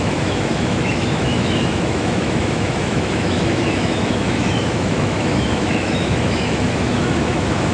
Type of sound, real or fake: fake